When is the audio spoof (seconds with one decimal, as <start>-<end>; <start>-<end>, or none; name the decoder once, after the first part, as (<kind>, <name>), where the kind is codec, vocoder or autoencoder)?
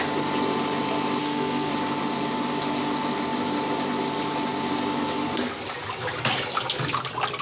1.2-1.7 (codec, SNAC)